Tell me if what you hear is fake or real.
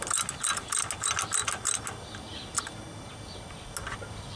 real